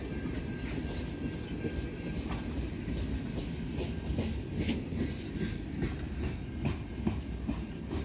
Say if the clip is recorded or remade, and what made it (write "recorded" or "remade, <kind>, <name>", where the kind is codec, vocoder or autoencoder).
recorded